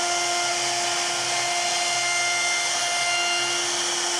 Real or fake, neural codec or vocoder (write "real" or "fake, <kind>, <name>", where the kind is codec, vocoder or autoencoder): real